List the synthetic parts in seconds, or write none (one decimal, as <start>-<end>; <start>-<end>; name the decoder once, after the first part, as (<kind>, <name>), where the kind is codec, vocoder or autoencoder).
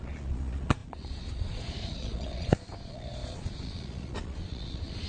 0.0-5.1 (vocoder, Vocos)